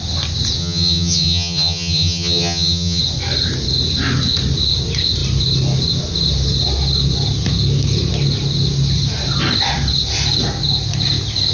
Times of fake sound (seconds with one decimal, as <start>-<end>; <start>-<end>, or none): 0.6-3.0